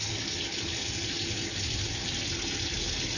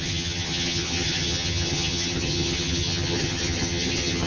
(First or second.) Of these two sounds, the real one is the first